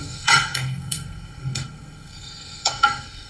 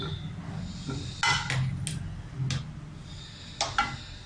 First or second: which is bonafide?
second